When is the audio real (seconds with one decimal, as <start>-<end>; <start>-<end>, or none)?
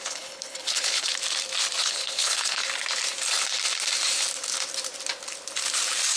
1.1-1.8; 2.6-6.2